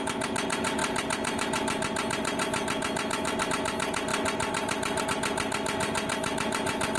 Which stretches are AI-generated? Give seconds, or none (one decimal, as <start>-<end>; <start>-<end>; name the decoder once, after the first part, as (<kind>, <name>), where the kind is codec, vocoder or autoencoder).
none